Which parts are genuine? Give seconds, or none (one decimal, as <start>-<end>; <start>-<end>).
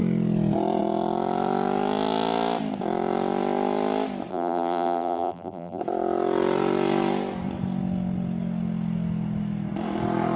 0.0-4.3; 5.8-10.4